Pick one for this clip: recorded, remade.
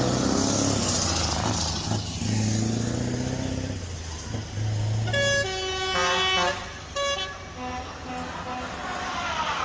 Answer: recorded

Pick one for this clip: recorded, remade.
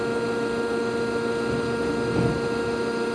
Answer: recorded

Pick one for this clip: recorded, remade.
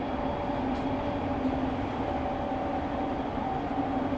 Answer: recorded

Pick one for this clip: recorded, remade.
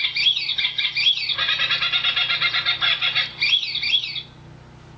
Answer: recorded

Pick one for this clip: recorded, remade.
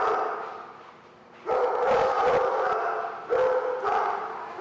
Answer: recorded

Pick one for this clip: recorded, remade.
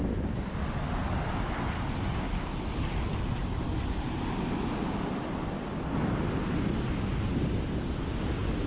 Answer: recorded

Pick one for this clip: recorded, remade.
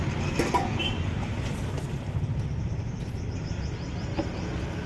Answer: recorded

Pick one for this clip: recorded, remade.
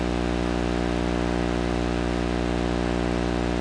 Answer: recorded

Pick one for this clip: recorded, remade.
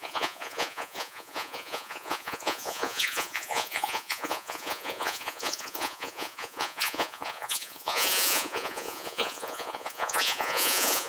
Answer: remade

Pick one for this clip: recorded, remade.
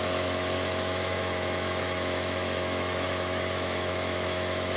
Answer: remade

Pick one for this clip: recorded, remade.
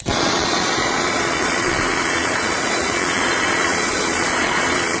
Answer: remade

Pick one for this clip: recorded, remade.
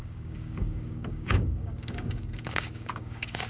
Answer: remade